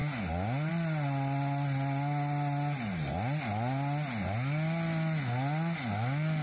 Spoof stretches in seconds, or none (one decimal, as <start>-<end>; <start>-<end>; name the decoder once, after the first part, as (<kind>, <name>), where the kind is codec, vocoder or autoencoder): none